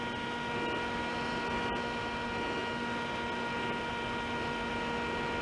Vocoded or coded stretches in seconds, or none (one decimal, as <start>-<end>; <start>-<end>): none